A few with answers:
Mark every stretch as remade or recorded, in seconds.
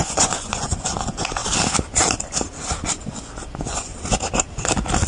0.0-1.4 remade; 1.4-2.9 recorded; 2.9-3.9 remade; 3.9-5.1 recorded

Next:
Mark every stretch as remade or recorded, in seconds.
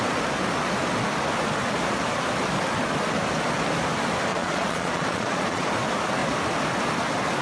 0.0-4.3 recorded; 4.3-5.7 remade; 5.7-7.4 recorded